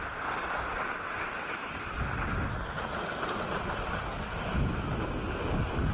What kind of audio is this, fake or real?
real